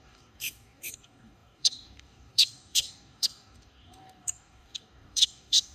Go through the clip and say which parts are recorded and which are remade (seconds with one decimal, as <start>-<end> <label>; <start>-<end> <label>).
0.0-5.7 remade

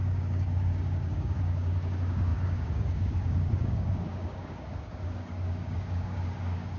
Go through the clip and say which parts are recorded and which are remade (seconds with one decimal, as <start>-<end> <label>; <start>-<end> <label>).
0.0-6.8 remade

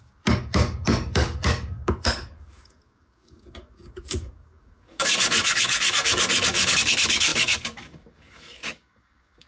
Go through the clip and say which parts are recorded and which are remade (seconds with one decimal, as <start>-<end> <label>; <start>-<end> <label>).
0.0-9.5 remade